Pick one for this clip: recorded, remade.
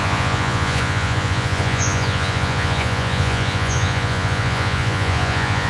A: remade